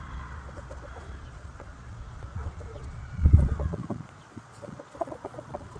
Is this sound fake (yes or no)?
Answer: yes